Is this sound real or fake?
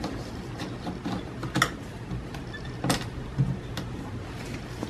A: real